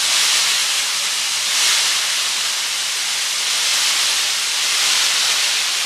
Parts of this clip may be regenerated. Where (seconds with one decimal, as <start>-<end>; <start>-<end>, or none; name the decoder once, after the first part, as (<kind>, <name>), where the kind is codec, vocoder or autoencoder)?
none